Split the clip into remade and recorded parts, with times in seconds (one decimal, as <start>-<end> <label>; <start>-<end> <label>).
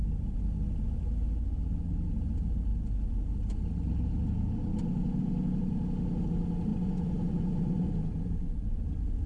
0.0-6.7 recorded; 6.7-7.9 remade; 7.9-9.3 recorded